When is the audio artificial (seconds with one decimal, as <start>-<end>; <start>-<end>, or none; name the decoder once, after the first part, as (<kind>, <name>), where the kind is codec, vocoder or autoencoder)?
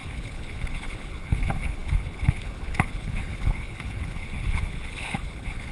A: 0.0-5.7 (codec, HILCodec)